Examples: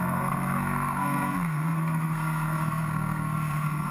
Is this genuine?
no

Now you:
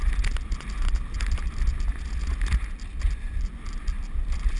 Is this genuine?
yes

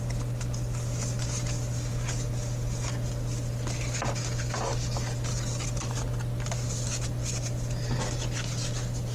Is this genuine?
yes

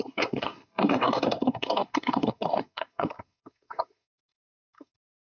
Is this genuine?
no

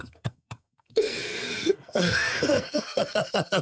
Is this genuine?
no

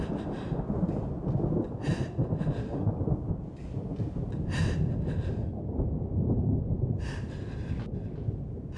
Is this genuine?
yes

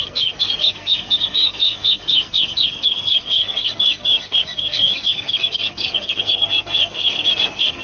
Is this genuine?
no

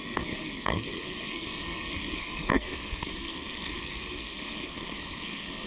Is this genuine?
no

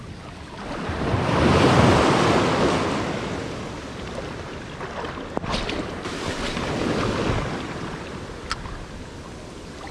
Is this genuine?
yes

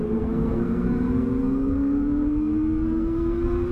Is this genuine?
no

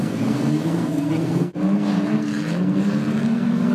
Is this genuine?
no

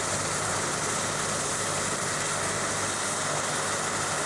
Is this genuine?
yes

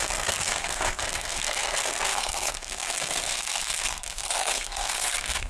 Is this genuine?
no